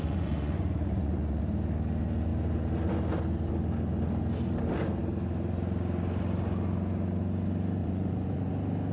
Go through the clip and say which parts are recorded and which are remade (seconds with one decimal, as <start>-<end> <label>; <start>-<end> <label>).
0.0-1.4 remade; 1.4-7.8 recorded; 7.8-8.5 remade; 8.5-8.9 recorded